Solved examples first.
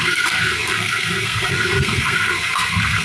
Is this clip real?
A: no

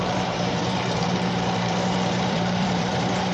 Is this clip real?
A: no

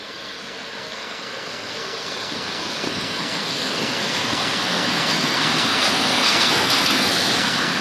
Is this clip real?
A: no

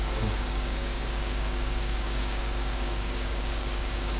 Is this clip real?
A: no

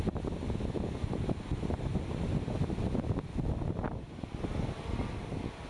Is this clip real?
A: yes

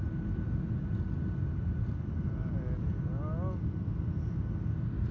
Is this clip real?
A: yes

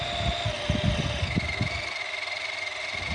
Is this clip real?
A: no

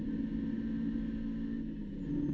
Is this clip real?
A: yes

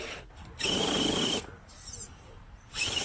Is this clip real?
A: no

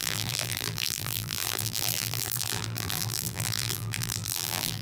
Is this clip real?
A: no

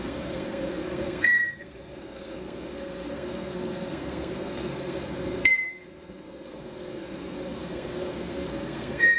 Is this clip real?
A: no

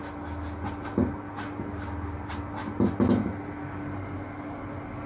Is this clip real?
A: yes